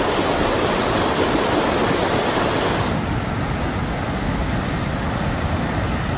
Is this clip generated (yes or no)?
no